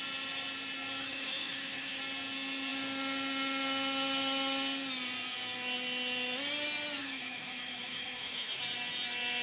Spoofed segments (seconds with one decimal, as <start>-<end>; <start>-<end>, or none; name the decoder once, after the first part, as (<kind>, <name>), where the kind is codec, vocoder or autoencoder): 1.0-2.0 (autoencoder, DAC-VAE); 7.0-8.6